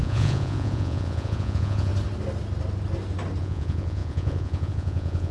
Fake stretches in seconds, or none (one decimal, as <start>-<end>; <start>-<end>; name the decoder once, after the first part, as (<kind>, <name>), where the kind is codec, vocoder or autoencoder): 0.0-1.9 (vocoder, Vocos); 3.4-5.3